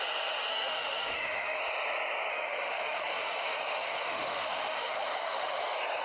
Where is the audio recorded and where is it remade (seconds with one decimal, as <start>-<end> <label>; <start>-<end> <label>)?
0.0-0.5 recorded; 0.5-1.6 remade; 1.6-2.3 recorded; 2.3-5.6 remade; 5.6-6.0 recorded